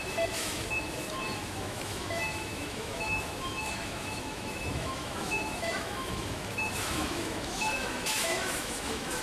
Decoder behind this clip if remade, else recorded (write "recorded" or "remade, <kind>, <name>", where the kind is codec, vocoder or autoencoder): remade, autoencoder, DAC-VAE